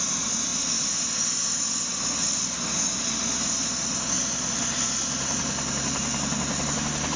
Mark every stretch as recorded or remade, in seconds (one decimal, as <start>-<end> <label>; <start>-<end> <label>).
0.0-7.2 recorded